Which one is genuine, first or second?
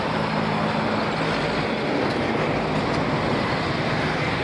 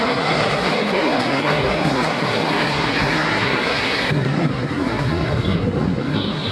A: first